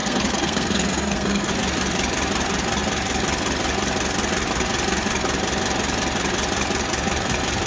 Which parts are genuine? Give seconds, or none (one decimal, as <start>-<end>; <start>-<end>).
1.5-7.7